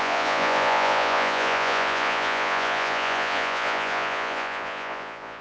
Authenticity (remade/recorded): remade